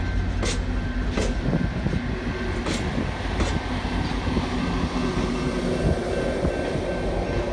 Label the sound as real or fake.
real